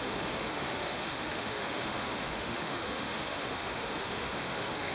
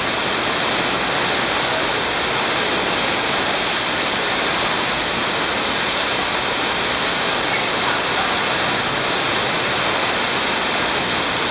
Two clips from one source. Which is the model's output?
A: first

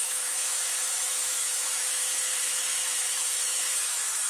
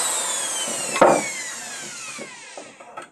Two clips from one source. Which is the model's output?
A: first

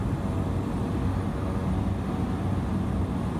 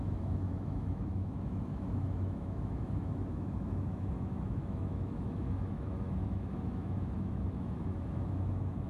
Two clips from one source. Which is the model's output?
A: second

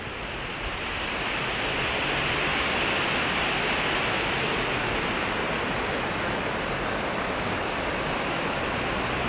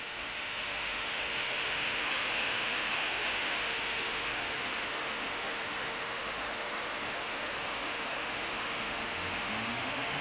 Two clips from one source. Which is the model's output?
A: second